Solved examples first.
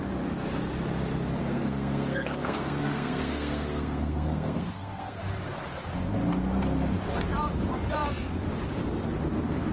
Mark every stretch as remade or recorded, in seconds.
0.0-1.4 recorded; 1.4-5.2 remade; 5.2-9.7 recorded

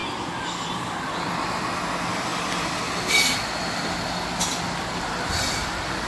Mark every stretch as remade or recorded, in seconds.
0.0-6.1 recorded